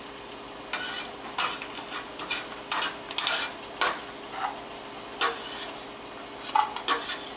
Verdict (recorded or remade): recorded